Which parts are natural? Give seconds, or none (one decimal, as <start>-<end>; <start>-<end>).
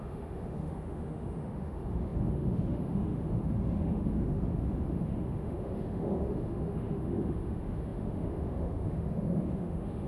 none